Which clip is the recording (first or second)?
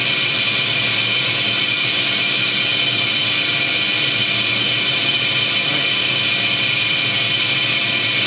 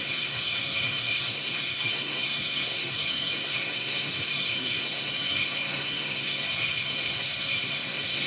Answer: first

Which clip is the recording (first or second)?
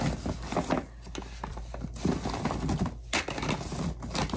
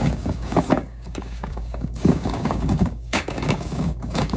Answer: first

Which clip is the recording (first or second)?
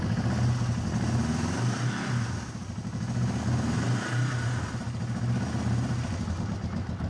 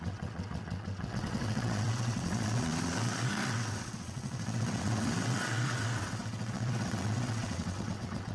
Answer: first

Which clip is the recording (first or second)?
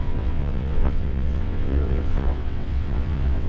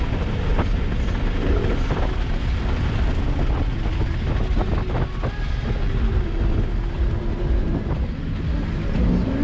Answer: second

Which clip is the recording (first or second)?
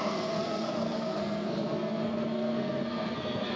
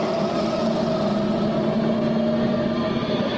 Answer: second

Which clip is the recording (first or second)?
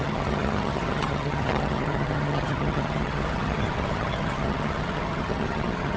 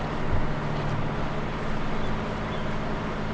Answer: second